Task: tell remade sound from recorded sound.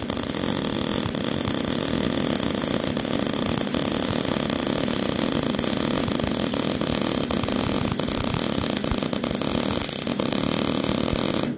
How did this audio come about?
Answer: recorded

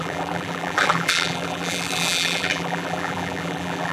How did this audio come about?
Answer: remade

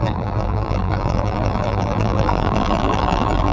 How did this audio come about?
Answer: remade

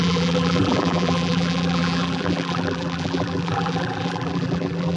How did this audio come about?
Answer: remade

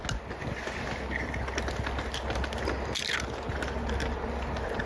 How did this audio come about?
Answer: recorded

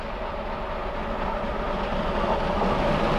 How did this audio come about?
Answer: recorded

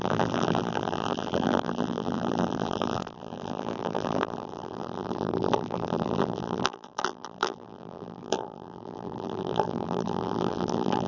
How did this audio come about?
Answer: remade